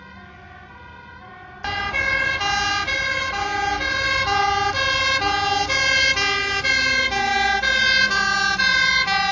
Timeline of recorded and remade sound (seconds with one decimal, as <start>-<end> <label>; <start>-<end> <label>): 0.0-9.3 recorded